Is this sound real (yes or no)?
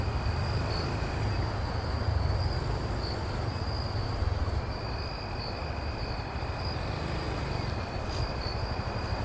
yes